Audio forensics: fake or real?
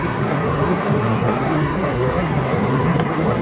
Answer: fake